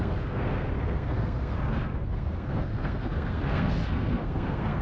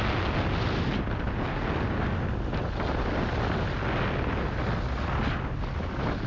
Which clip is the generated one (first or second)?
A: first